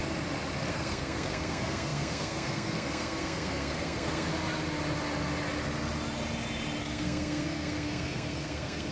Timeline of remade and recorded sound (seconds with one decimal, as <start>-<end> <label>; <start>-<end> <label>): 0.0-0.7 recorded; 0.7-4.3 remade; 4.3-6.8 recorded; 6.8-8.9 remade